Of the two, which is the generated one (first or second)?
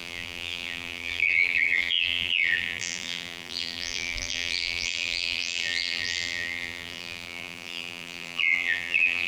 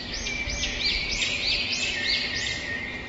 first